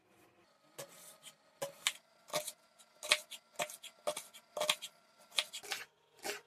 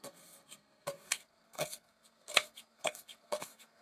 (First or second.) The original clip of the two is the first